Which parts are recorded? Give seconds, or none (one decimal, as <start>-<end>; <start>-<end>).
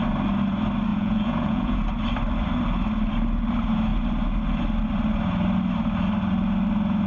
0.0-0.9; 1.8-7.1